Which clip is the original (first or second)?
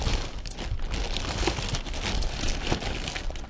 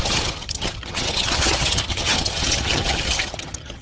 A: first